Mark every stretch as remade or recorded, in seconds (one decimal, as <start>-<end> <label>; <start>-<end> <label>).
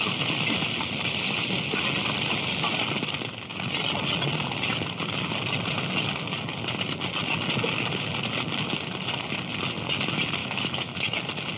0.0-10.4 recorded; 10.4-11.2 remade; 11.2-11.6 recorded